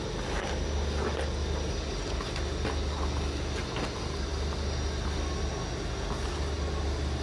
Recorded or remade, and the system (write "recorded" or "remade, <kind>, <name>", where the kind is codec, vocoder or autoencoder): recorded